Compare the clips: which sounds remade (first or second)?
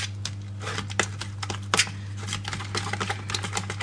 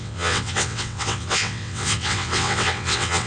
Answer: second